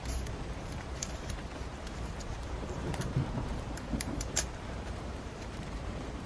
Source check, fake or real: fake